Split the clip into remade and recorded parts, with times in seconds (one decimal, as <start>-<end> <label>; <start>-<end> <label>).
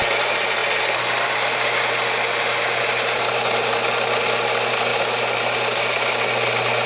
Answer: 0.0-6.9 recorded